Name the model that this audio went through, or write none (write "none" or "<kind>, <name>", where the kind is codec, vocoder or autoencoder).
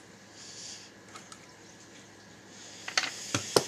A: none